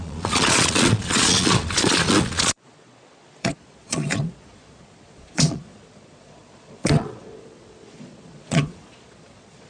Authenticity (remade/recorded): remade